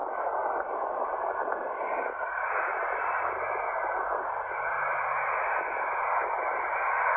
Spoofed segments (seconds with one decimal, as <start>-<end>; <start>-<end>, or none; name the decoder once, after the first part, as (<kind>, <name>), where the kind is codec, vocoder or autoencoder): none